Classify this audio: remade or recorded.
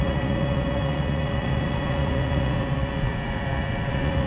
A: remade